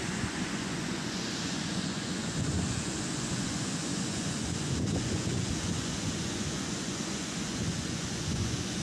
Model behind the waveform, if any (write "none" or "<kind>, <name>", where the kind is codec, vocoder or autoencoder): vocoder, Vocos